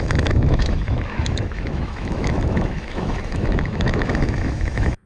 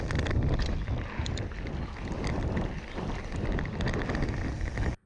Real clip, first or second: second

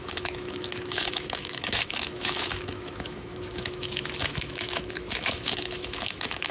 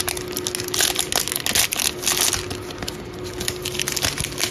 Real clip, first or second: second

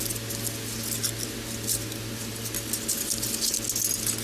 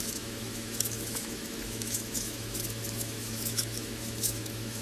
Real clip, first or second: first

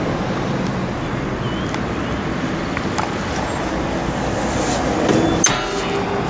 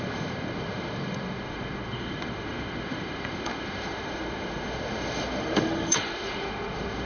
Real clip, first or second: first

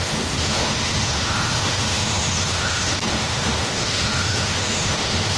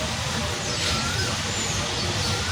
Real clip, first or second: second